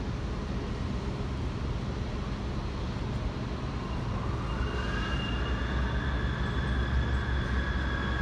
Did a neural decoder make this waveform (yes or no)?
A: no